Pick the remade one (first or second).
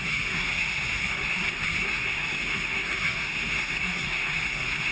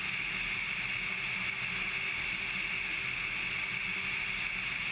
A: first